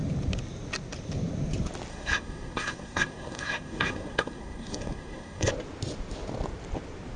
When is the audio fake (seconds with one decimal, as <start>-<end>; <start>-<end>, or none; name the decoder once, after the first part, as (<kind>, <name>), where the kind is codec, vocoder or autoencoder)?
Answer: 1.9-5.5 (codec, SNAC)